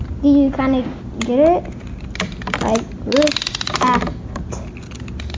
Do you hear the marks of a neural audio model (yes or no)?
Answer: no